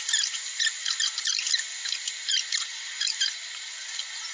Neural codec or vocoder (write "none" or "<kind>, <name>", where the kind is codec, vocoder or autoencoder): vocoder, BigVGAN v2